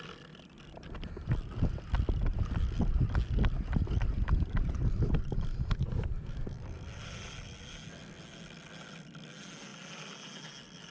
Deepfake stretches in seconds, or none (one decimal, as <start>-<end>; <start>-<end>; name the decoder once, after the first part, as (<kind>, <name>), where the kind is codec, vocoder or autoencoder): none